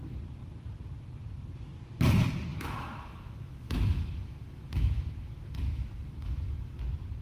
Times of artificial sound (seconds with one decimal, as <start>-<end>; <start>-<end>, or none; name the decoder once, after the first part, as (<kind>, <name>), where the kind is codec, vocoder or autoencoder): 2.5-6.8 (autoencoder, DAC-VAE)